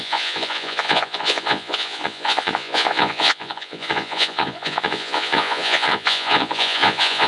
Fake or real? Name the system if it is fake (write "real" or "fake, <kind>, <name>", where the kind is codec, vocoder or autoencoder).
fake, vocoder, Vocos